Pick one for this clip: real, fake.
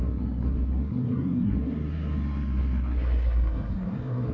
fake